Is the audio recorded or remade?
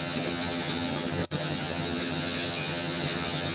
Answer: remade